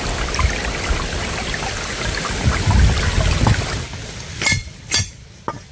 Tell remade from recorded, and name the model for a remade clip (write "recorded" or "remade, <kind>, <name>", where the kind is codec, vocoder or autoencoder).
recorded